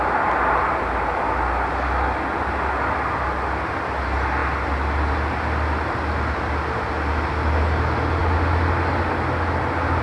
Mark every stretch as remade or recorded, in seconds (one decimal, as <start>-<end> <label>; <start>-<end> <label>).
0.0-10.0 recorded